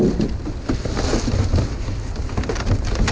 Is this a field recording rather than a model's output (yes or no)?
yes